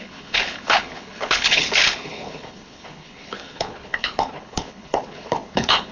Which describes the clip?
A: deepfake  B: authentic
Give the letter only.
A